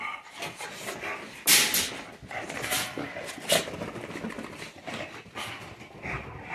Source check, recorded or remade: recorded